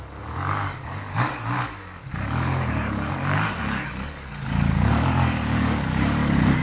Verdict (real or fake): fake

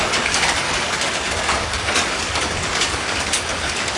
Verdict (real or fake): fake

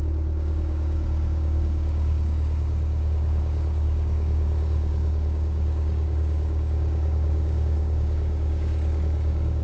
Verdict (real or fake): fake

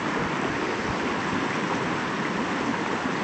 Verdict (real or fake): real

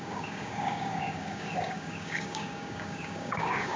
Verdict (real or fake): fake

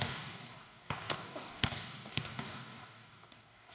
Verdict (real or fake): fake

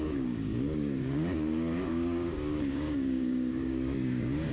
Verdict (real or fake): fake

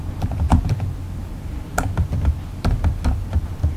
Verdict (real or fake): real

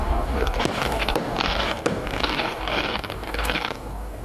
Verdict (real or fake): fake